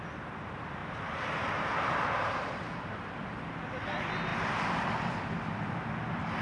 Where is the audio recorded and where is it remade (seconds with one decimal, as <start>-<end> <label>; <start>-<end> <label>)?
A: 0.0-0.8 recorded; 0.8-2.8 remade; 2.8-4.3 recorded; 4.3-5.2 remade; 5.2-6.4 recorded